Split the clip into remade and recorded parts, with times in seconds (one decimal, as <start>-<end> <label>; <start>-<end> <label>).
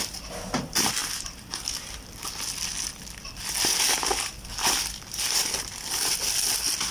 0.0-6.9 recorded